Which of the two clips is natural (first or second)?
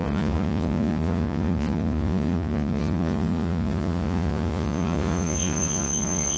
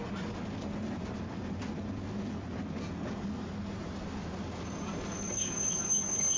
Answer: second